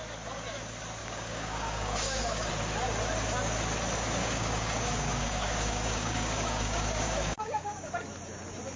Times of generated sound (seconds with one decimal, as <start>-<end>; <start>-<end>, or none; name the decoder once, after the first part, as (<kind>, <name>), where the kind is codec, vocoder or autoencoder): 1.0-2.5 (codec, DAC); 4.2-7.9